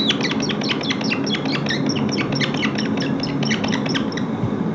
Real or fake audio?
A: real